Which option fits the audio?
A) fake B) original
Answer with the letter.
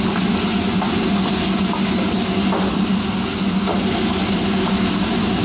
B